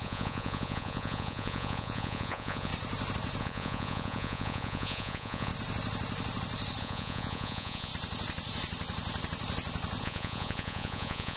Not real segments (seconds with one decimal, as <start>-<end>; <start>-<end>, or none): 0.0-2.7; 3.4-5.5; 6.8-7.9; 10.0-11.4